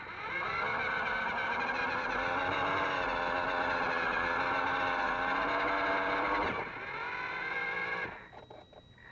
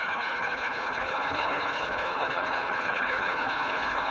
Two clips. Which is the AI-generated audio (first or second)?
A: second